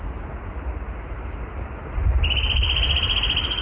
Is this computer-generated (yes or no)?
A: no